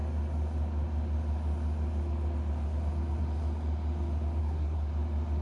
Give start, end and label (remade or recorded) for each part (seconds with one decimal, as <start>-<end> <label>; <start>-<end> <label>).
0.0-4.4 recorded; 4.4-4.9 remade; 4.9-5.4 recorded